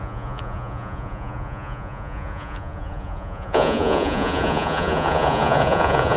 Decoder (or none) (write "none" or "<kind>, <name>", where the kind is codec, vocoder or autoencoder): vocoder, Vocos